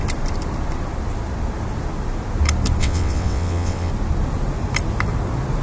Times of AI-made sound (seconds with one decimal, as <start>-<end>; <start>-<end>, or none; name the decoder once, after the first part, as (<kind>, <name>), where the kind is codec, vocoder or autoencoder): 2.8-3.9 (vocoder, WaveNeXt)